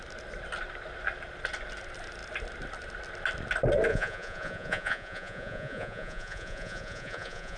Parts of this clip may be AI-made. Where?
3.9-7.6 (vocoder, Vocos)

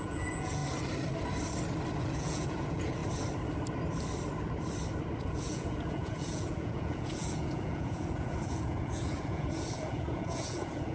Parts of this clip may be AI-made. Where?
0.0-0.6 (vocoder, Vocos); 2.0-3.0; 5.2-10.9

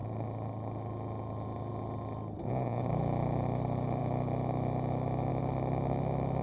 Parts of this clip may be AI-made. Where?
none

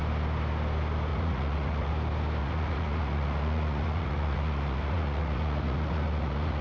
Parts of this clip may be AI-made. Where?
1.1-1.9 (vocoder, Vocos); 2.4-6.6

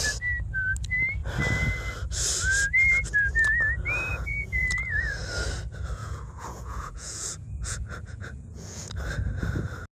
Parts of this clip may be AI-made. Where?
4.1-5.2 (vocoder, Vocos); 6.0-8.9

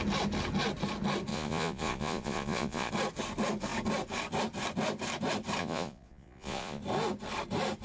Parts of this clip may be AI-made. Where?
1.3-2.9 (vocoder, Vocos); 5.6-6.8

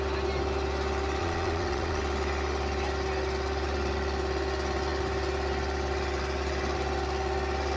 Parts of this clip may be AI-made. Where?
1.2-2.0 (vocoder, Vocos)

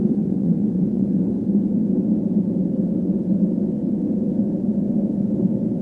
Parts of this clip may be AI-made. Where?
0.0-1.4 (vocoder, Vocos)